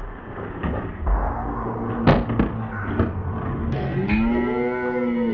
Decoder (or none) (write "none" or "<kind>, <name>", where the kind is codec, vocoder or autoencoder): none